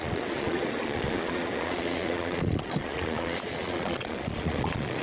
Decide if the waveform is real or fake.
fake